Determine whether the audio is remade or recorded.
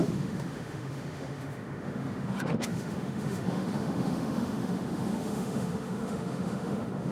remade